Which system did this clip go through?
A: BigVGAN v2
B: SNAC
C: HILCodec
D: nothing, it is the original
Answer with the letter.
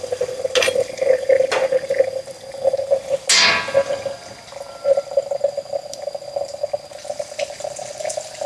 D